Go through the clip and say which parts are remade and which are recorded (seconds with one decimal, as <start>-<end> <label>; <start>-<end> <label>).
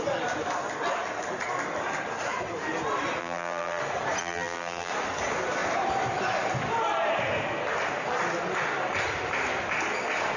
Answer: 0.0-3.2 recorded; 3.2-3.8 remade; 3.8-4.2 recorded; 4.2-4.9 remade; 4.9-10.4 recorded